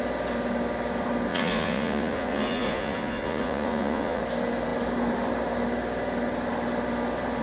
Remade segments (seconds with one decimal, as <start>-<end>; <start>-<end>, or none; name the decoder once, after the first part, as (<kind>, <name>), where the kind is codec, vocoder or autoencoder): 1.3-4.2 (vocoder, Vocos)